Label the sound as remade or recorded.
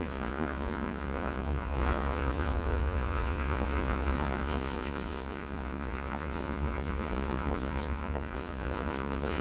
remade